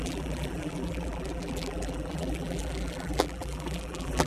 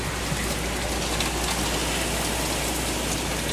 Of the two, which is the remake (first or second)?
first